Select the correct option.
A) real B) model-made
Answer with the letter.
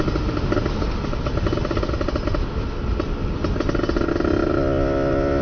A